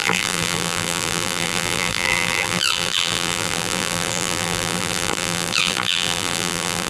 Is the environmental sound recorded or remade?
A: remade